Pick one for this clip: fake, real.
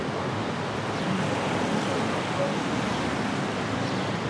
real